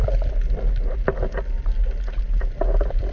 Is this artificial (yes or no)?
no